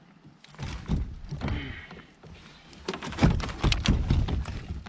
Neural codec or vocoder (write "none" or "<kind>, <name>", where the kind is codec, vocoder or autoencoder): none